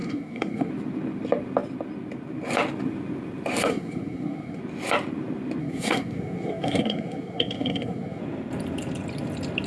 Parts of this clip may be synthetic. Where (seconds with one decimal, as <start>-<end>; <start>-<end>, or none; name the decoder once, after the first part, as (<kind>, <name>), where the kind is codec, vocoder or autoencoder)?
0.0-0.7 (codec, SNAC); 3.6-4.6; 5.6-8.2